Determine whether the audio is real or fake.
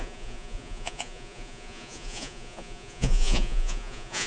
fake